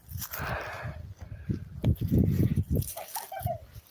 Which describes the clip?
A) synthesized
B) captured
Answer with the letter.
B